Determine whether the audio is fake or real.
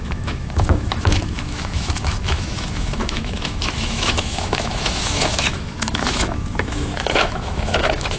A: fake